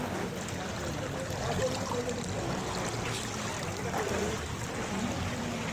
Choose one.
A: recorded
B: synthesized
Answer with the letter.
A